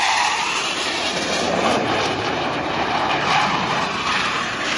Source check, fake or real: fake